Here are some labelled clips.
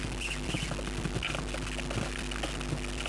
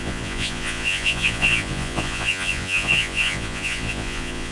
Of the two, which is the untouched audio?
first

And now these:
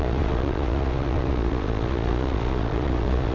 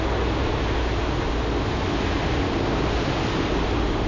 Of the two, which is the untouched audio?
second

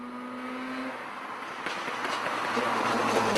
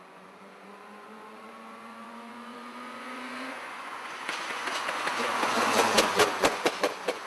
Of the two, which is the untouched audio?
first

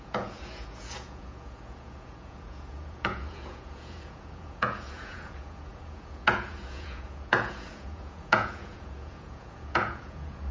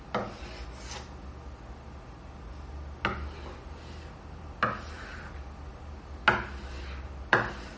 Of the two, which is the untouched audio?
second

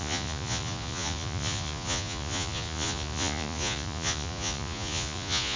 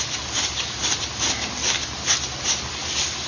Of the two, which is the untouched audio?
second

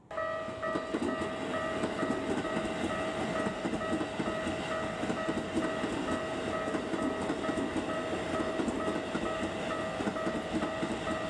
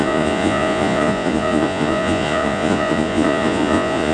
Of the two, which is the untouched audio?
first